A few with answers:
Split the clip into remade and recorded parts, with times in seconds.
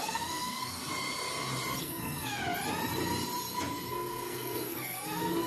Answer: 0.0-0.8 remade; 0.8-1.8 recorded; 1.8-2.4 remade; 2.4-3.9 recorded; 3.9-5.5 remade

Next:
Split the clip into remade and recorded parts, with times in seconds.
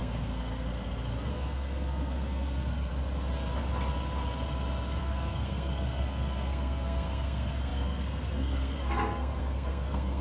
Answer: 0.0-0.7 remade; 0.7-1.3 recorded; 1.3-2.9 remade; 2.9-5.0 recorded; 5.0-10.2 remade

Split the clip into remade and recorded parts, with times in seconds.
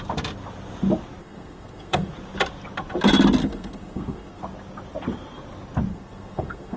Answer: 0.0-1.2 recorded; 1.2-2.1 remade; 2.1-3.4 recorded; 3.4-4.4 remade; 4.4-5.9 recorded; 5.9-6.8 remade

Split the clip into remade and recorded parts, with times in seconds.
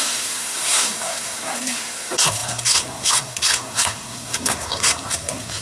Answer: 0.0-5.6 remade